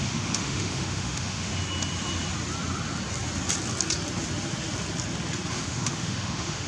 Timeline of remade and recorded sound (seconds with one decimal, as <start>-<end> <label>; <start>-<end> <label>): 0.0-1.5 remade; 1.5-5.5 recorded; 5.5-6.7 remade